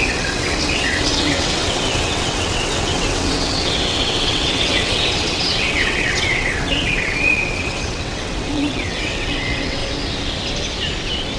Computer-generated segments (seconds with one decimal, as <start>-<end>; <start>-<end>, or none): 0.0-9.8